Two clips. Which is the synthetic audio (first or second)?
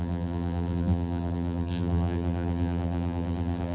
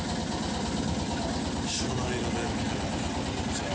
first